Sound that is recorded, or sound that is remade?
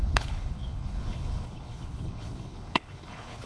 remade